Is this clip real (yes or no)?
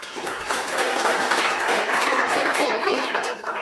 no